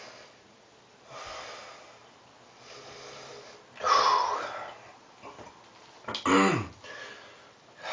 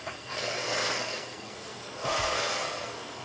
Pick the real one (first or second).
first